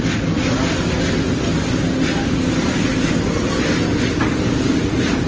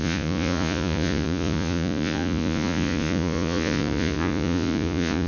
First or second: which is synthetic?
second